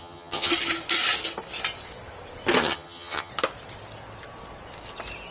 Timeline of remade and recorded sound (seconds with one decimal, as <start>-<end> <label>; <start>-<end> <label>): 0.0-0.5 remade; 0.5-2.6 recorded; 2.6-3.3 remade; 3.3-5.3 recorded